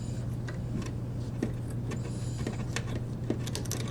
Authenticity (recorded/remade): recorded